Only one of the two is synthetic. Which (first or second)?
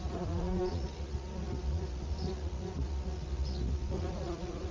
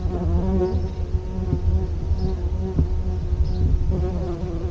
first